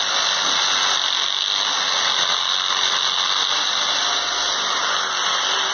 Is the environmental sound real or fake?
real